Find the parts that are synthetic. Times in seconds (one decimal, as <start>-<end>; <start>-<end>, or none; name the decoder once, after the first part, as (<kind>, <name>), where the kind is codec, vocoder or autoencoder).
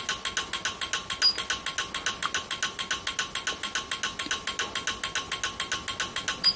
none